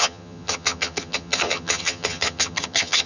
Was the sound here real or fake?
fake